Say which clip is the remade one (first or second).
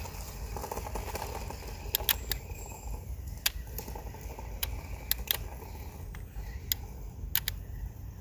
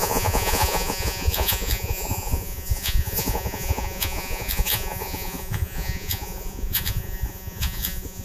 second